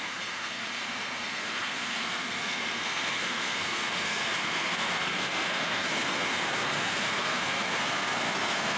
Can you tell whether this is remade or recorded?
remade